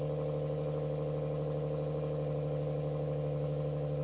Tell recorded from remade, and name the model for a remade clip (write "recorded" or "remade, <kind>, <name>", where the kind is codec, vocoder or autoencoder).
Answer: recorded